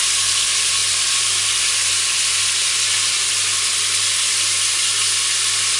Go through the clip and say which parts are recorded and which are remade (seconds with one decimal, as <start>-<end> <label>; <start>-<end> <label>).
0.0-5.8 recorded

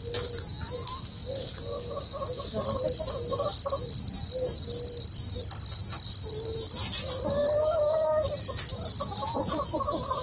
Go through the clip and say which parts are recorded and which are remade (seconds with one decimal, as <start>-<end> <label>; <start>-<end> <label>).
0.0-9.4 recorded; 9.4-10.2 remade

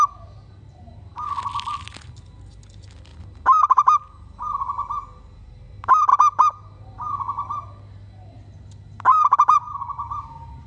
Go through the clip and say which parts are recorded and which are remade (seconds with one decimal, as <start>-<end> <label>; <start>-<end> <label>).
0.0-9.1 recorded; 9.1-10.7 remade

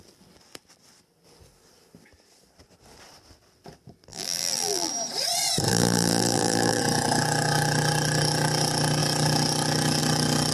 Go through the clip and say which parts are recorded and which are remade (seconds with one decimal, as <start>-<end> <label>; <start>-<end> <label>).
0.0-4.1 recorded; 4.1-4.9 remade; 4.9-5.7 recorded; 5.7-6.8 remade; 6.8-10.5 recorded

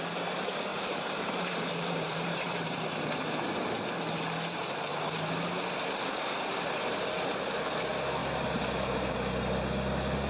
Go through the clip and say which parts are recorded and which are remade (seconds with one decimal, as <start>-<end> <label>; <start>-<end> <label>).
0.0-0.7 recorded; 0.7-2.7 remade; 2.7-4.9 recorded; 4.9-5.6 remade; 5.6-8.2 recorded; 8.2-9.1 remade; 9.1-10.3 recorded

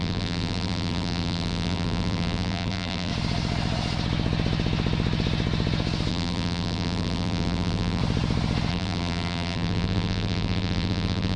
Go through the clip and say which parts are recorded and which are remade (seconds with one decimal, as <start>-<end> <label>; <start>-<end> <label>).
0.0-3.1 remade; 3.1-6.1 recorded; 6.1-8.0 remade; 8.0-8.7 recorded; 8.7-11.4 remade

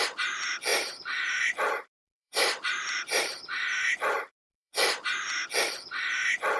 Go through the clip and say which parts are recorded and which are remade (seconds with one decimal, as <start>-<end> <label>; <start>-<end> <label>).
0.0-0.7 recorded; 0.7-4.7 remade; 4.7-6.6 recorded